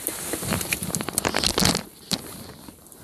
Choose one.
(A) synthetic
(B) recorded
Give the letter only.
A